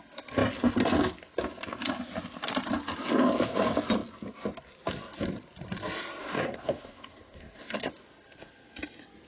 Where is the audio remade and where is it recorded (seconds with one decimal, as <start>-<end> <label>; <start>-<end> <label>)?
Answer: 0.0-6.2 recorded; 6.2-7.9 remade; 7.9-9.3 recorded